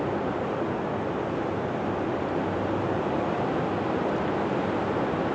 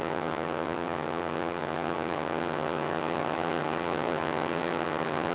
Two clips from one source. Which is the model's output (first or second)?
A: second